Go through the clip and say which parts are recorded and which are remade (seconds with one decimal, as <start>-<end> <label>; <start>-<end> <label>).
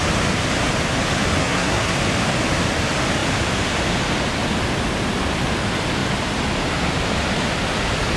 0.0-1.4 recorded; 1.4-1.9 remade; 1.9-8.2 recorded